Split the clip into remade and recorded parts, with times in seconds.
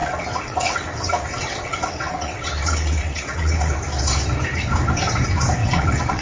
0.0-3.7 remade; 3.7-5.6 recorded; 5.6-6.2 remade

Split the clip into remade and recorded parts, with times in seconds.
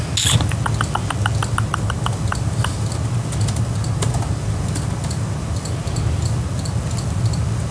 0.0-7.7 recorded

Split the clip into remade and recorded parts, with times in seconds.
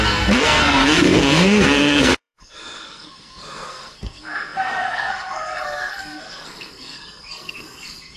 0.0-8.2 remade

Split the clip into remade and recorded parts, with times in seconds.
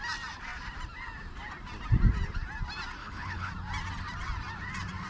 0.0-3.0 recorded; 3.0-3.5 remade; 3.5-5.1 recorded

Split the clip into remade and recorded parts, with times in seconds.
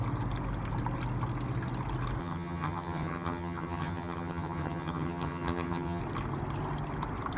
0.0-2.2 recorded; 2.2-6.0 remade; 6.0-7.4 recorded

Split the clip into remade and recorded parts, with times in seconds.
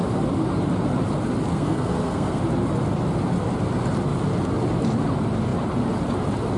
0.0-1.5 recorded; 1.5-2.4 remade; 2.4-6.6 recorded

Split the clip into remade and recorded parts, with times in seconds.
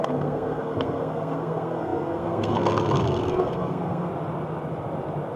0.0-4.1 remade; 4.1-5.4 recorded